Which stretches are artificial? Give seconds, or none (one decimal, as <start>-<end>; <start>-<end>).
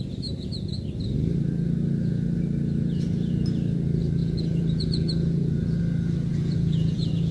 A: 4.2-5.8; 6.3-7.3